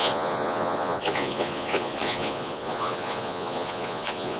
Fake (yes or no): yes